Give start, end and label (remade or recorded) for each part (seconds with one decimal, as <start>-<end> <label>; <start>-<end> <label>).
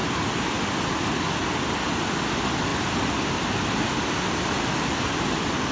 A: 0.0-5.7 recorded